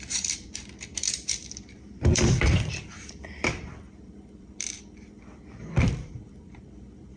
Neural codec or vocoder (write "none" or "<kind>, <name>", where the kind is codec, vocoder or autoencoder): vocoder, BigVGAN v2